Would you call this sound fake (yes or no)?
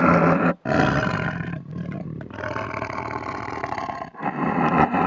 no